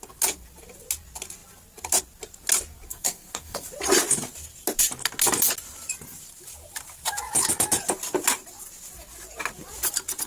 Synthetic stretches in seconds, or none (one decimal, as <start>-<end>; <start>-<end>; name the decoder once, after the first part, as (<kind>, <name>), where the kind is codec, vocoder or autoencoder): 2.9-3.7 (codec, SNAC)